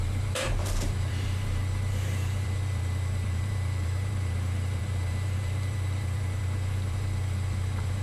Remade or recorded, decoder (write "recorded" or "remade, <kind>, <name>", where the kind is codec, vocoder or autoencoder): remade, vocoder, BigVGAN v2